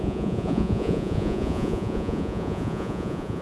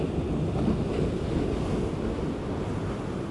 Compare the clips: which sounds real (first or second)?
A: second